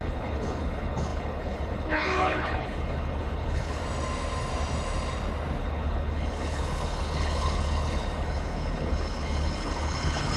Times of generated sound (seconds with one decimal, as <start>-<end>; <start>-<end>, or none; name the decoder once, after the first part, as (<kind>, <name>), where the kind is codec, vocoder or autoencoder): 0.0-3.8 (codec, HILCodec); 5.6-10.4